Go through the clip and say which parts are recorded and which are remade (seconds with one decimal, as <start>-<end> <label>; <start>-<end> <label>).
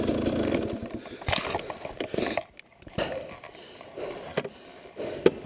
0.0-2.7 recorded; 2.7-4.0 remade; 4.0-5.5 recorded